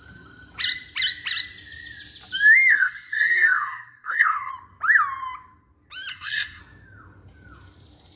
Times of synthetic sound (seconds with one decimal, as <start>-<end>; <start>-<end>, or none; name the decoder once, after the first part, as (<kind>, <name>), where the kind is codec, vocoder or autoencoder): 2.7-4.5 (codec, SNAC); 6.1-6.6